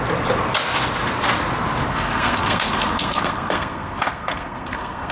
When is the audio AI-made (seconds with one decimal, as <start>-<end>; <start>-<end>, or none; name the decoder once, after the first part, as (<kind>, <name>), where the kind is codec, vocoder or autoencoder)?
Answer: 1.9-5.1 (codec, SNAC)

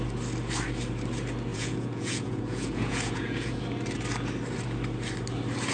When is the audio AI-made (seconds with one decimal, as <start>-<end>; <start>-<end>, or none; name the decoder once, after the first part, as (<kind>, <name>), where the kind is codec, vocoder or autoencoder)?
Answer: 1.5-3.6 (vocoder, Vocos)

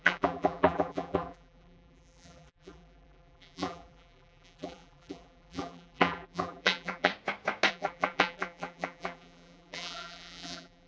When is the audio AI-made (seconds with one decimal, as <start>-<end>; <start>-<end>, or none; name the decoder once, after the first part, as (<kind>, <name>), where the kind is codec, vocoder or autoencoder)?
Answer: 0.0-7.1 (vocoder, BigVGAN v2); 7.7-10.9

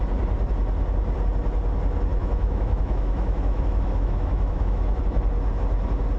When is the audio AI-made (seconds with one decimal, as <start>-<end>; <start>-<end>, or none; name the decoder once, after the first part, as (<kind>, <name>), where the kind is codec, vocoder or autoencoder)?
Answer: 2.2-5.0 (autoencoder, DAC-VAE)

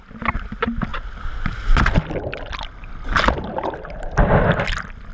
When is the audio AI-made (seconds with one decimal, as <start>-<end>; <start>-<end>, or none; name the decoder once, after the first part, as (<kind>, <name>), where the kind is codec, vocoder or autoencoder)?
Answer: none

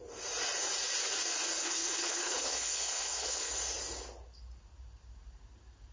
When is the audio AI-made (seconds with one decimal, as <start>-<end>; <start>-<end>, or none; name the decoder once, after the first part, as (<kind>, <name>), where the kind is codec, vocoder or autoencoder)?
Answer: 1.6-3.5 (codec, HILCodec)

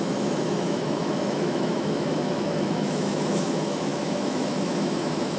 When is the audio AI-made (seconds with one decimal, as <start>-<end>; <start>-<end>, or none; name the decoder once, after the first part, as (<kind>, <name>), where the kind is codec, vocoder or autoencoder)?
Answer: 0.0-5.4 (autoencoder, DAC-VAE)

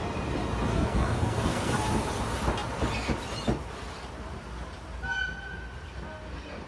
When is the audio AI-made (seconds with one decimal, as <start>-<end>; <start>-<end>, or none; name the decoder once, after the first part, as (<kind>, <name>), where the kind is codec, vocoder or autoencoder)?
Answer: 0.7-1.7 (codec, SNAC)